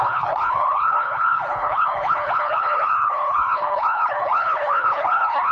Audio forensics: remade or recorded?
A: remade